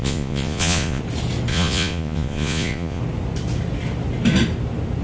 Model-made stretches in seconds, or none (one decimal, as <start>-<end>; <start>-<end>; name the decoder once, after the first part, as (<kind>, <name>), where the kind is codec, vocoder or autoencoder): 0.0-1.0 (vocoder, Vocos); 1.5-3.0